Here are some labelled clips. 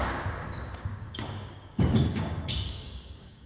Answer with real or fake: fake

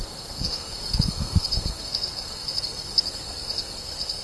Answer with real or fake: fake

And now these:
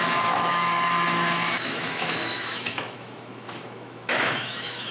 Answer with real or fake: fake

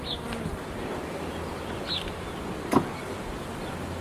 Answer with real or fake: real